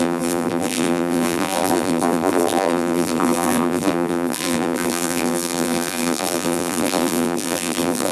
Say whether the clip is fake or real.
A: fake